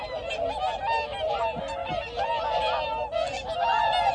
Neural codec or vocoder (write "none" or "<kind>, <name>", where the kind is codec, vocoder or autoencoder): none